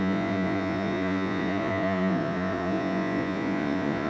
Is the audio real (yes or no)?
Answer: no